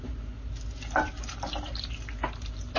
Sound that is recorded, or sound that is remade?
recorded